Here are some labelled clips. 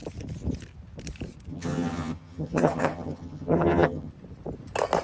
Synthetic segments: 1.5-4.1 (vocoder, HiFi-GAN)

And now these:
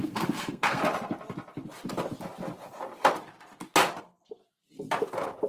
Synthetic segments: 0.0-0.8 (codec, SNAC); 4.0-4.4

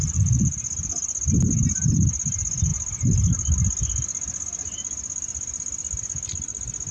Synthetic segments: none

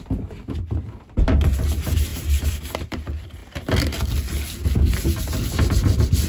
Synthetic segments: 0.0-3.4 (vocoder, BigVGAN v2); 5.6-6.3

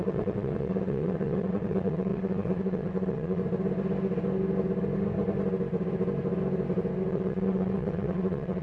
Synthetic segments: 0.0-3.4 (vocoder, WaveNeXt); 7.1-8.6

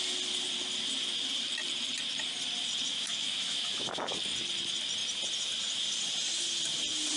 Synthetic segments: 2.9-4.2 (autoencoder, DAC-VAE)

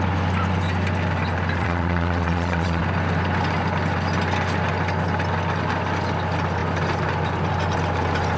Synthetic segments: 1.6-2.8 (vocoder, Vocos)